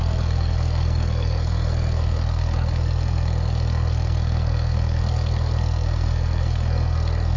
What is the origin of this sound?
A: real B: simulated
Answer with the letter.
B